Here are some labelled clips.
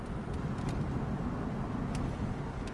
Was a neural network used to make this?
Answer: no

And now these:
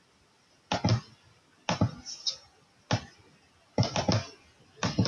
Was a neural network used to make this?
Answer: no